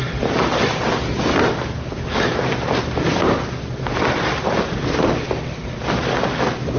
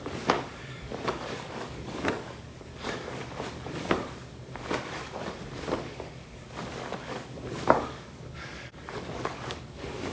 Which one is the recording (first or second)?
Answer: first